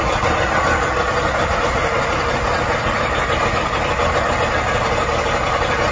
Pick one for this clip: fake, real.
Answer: real